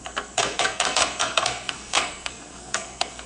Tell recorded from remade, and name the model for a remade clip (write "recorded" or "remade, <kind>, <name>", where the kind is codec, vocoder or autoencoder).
remade, codec, SNAC